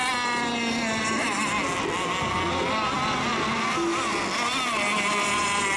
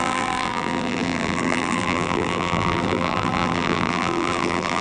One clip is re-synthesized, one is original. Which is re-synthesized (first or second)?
second